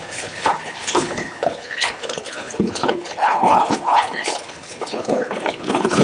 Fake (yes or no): yes